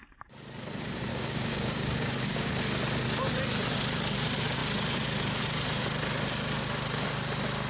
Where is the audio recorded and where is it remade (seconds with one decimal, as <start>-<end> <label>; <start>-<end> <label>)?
0.0-1.1 recorded; 1.1-2.5 remade; 2.5-7.7 recorded